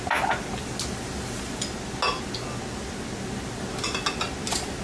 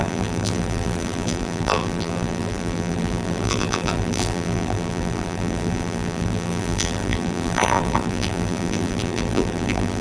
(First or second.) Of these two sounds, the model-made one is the second